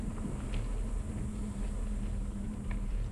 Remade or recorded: recorded